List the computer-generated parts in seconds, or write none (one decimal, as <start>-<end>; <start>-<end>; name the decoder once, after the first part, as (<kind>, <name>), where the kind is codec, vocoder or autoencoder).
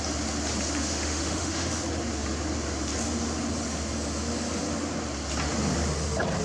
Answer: 0.8-1.8 (autoencoder, DAC-VAE)